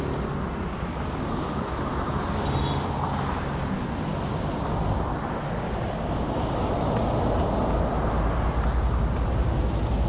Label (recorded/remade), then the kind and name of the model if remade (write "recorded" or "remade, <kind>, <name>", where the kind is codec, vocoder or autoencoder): recorded